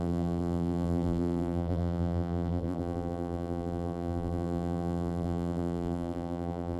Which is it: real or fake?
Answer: fake